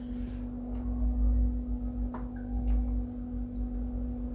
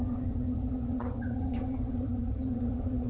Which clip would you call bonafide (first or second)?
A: first